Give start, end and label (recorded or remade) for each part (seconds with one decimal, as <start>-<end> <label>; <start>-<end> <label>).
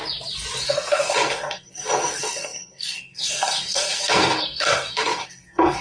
0.0-0.6 recorded; 0.6-5.8 remade